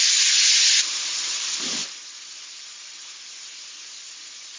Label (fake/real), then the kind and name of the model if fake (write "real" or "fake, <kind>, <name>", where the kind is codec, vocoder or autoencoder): real